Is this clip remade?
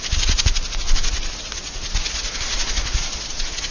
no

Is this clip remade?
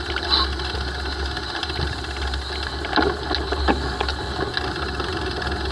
no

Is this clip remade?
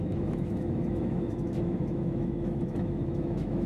yes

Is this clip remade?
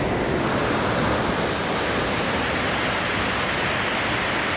no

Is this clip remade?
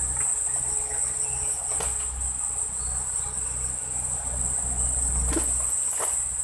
no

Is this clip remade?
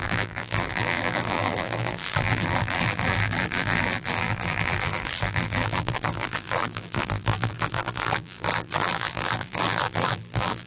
yes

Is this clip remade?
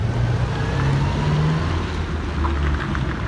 no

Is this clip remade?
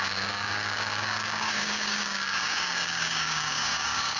yes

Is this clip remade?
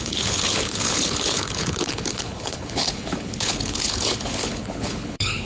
yes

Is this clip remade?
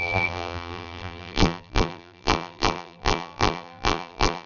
yes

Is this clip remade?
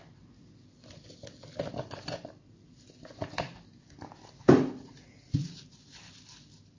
no